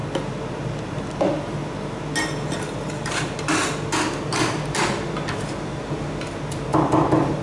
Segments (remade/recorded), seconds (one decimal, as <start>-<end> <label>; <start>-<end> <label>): 0.0-7.4 recorded